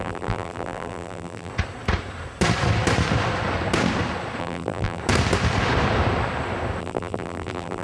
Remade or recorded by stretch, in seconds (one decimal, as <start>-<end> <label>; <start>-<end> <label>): 0.0-1.5 remade; 1.5-4.4 recorded; 4.4-5.0 remade; 5.0-6.8 recorded; 6.8-7.8 remade